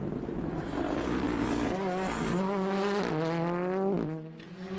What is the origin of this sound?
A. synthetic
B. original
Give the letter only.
B